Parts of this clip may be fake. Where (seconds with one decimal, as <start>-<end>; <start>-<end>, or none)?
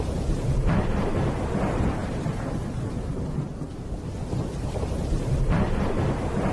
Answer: none